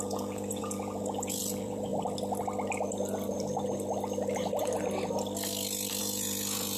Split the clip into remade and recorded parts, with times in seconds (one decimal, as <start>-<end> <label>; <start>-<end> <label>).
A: 0.0-1.9 remade; 1.9-6.0 recorded; 6.0-6.8 remade